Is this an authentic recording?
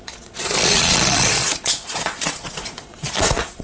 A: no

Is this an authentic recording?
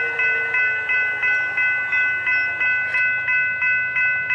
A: yes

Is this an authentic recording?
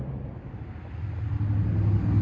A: yes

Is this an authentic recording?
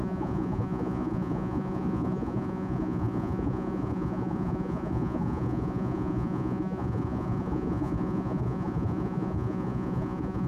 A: no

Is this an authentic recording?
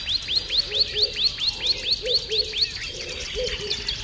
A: yes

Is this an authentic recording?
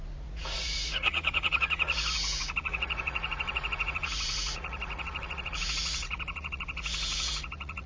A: no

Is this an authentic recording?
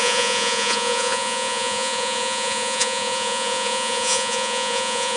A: no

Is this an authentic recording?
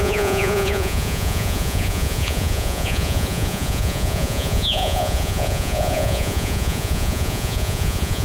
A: no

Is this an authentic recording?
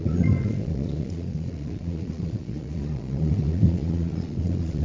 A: no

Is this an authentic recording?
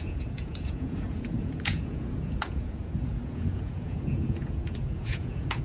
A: no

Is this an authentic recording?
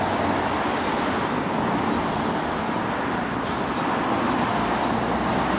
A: yes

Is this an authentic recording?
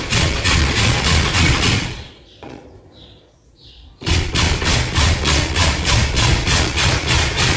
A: no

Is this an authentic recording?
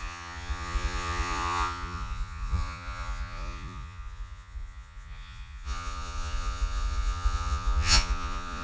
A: no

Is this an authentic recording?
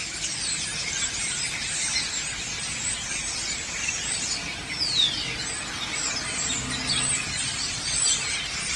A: yes